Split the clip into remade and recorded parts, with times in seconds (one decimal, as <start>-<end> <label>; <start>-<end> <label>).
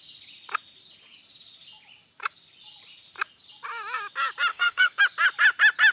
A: 0.0-4.5 recorded; 4.5-5.0 remade; 5.0-5.9 recorded